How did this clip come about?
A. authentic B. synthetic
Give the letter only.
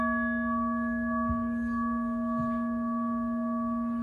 A